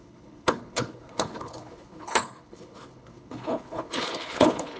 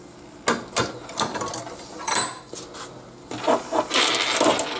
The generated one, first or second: first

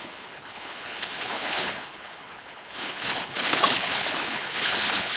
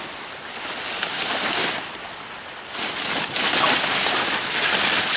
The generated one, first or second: first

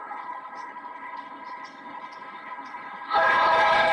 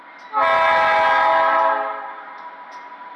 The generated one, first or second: first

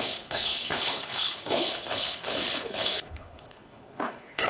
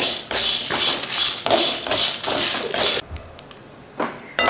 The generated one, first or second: first